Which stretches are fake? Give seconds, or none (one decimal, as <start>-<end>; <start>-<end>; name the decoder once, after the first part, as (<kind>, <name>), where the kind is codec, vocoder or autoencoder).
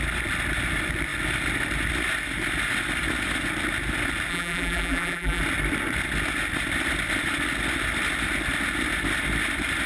4.3-5.4 (vocoder, BigVGAN v2)